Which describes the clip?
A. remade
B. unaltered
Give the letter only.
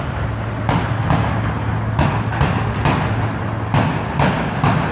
B